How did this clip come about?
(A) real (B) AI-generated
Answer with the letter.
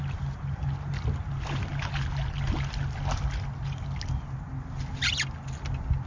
A